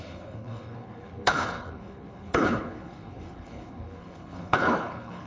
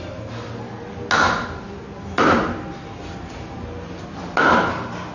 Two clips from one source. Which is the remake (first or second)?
first